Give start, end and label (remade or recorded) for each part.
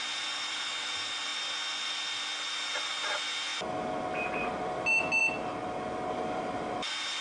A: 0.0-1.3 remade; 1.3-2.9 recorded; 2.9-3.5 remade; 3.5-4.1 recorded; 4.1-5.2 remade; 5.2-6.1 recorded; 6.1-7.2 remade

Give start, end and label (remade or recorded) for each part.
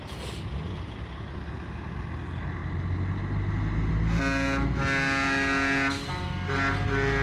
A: 0.0-7.2 recorded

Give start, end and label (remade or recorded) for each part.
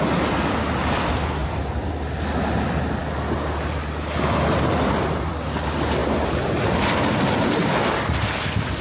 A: 0.0-1.4 recorded; 1.4-1.9 remade; 1.9-8.8 recorded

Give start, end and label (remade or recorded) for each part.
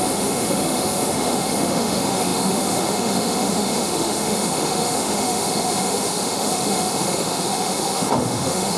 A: 0.0-8.8 remade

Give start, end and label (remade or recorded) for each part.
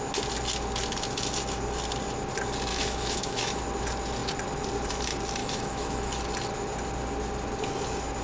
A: 0.0-2.7 recorded; 2.7-3.6 remade; 3.6-5.4 recorded; 5.4-6.2 remade; 6.2-8.2 recorded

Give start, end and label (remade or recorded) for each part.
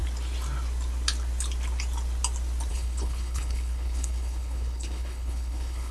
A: 0.0-2.7 recorded; 2.7-5.9 remade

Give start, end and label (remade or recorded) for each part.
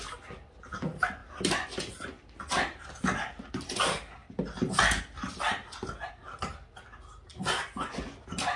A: 0.0-8.6 recorded